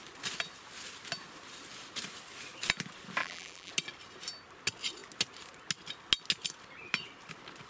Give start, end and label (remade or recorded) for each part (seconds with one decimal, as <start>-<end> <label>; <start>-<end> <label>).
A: 0.0-3.2 recorded; 3.2-3.7 remade; 3.7-7.7 recorded